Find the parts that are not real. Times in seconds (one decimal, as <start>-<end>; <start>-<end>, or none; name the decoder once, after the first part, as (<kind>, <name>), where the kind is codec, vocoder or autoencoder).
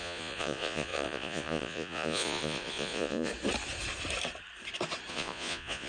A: 0.0-3.3 (vocoder, Vocos); 5.1-5.9